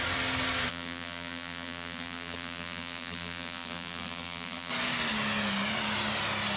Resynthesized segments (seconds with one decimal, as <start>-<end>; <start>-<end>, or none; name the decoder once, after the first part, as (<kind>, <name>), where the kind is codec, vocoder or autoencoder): 0.7-4.7 (vocoder, BigVGAN v2)